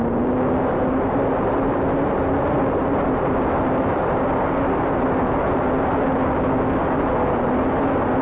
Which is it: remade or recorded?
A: recorded